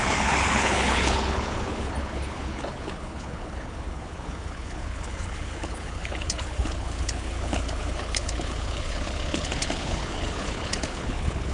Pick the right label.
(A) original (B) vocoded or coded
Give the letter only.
B